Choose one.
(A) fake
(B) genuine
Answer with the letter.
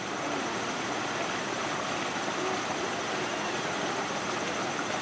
B